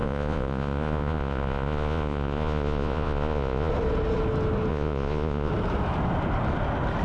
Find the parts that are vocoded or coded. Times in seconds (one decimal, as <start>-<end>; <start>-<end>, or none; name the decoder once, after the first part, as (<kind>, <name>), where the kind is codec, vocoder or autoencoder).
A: 0.0-3.7 (vocoder, Vocos); 4.7-5.5

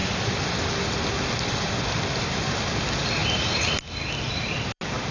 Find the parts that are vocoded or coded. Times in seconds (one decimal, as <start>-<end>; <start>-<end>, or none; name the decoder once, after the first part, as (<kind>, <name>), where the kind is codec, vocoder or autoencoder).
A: 0.0-2.5 (vocoder, BigVGAN v2)